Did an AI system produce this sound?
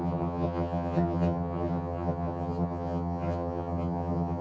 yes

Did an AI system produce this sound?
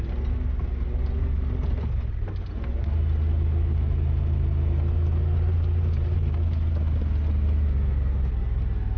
no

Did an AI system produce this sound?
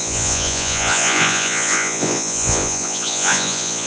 yes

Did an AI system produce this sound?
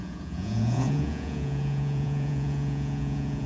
yes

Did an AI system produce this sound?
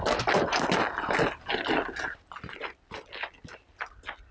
no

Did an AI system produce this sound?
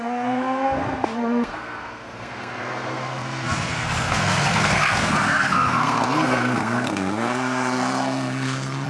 yes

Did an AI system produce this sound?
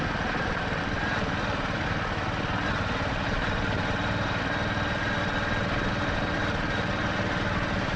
no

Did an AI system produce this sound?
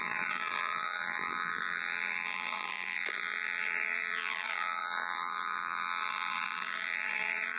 yes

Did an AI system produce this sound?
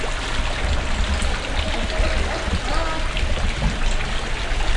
no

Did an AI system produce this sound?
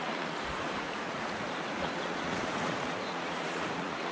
yes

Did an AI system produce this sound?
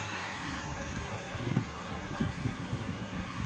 yes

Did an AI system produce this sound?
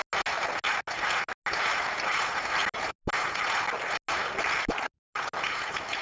no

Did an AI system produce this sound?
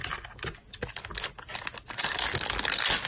no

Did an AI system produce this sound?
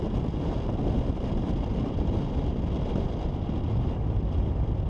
yes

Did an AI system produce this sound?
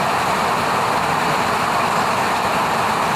no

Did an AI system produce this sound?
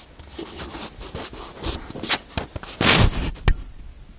no